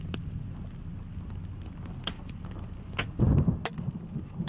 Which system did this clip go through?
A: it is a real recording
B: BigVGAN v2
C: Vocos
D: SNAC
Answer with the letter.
A